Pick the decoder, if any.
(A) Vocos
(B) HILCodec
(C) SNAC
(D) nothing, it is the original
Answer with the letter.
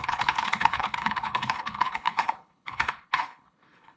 B